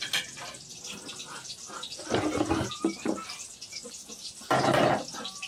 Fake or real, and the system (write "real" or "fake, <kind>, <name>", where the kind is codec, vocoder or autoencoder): real